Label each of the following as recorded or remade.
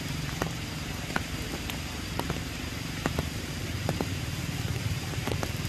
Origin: remade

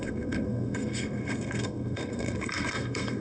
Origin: remade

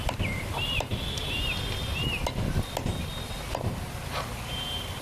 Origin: recorded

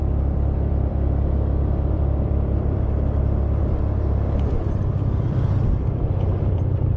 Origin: remade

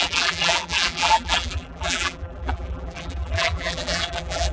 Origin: remade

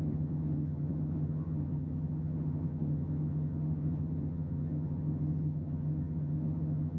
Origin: remade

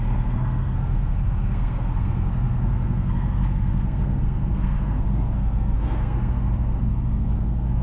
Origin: remade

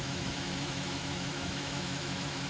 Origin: remade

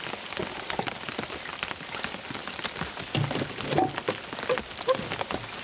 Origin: recorded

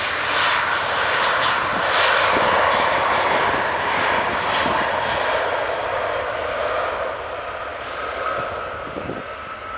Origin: recorded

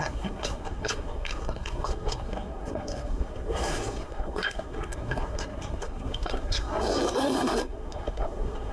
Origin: remade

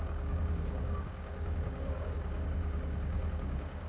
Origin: remade